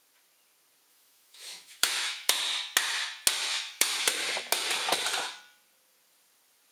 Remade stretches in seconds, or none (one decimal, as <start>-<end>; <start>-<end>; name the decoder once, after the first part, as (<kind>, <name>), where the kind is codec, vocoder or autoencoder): 0.9-2.4 (autoencoder, DAC-VAE); 3.5-4.1